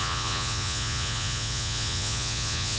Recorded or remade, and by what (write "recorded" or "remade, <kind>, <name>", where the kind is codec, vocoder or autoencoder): remade, vocoder, Vocos